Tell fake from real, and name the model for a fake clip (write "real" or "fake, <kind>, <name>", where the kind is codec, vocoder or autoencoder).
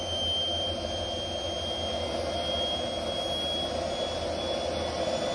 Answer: real